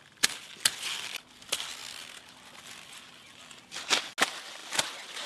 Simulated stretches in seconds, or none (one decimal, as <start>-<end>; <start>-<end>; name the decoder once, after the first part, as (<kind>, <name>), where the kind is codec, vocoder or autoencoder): none